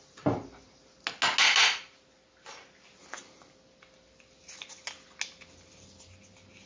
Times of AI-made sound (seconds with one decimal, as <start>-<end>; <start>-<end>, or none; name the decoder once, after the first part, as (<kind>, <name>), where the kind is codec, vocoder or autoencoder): none